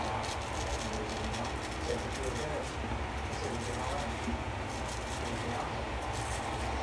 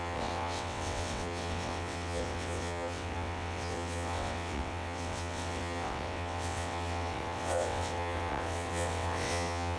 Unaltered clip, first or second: first